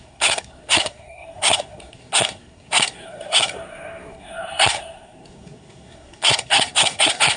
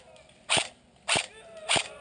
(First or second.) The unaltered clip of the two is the second